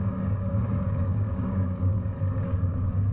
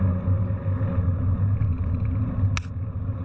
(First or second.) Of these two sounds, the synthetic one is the first